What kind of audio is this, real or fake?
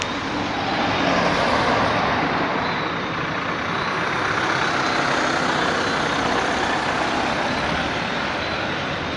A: real